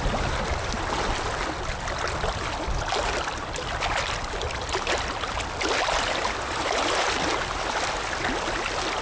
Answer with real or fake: real